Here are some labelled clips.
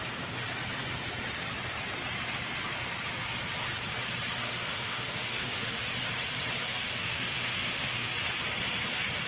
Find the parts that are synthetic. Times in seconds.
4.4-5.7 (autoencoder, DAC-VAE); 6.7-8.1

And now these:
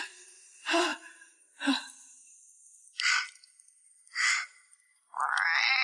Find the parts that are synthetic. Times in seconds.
none

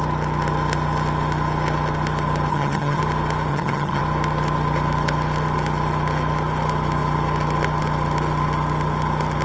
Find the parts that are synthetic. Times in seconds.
2.5-3.0 (vocoder, HiFi-GAN); 3.5-4.0

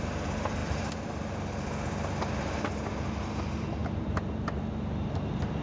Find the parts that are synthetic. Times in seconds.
none

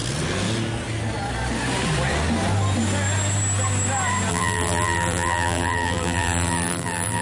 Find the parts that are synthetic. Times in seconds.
4.3-7.2 (vocoder, BigVGAN v2)

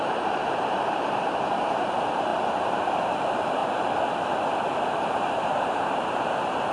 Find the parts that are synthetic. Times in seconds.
0.0-2.3 (vocoder, BigVGAN v2); 2.8-3.6; 4.8-6.7

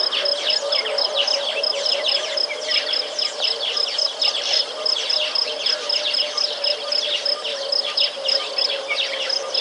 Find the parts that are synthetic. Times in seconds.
none

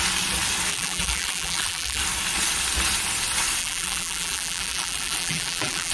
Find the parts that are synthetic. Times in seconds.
0.7-2.0 (vocoder, BigVGAN v2); 3.6-5.9